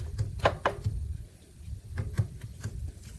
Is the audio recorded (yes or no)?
yes